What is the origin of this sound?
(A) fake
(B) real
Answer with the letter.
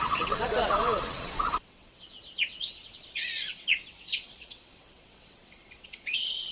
A